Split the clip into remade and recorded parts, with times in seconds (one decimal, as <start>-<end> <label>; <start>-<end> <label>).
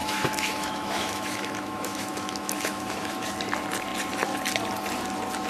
0.0-3.3 remade; 3.3-5.5 recorded